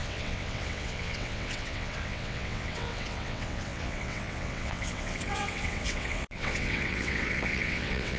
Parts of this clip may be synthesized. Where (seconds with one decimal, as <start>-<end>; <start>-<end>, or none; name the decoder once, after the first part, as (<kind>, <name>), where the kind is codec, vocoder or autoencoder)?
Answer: 0.0-8.2 (vocoder, WaveNeXt)